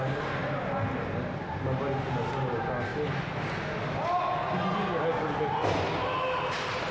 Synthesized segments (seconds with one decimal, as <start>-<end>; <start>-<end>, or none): none